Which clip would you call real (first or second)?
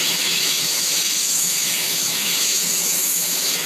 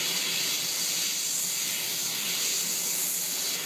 second